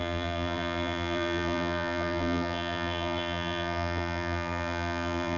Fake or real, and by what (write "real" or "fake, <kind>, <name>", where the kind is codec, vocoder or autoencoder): fake, vocoder, BigVGAN v2